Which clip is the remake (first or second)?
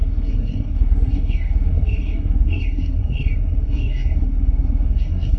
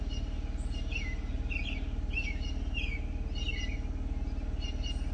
first